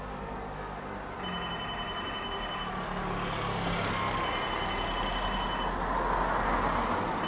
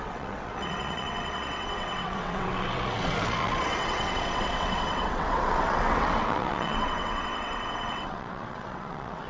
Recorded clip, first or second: first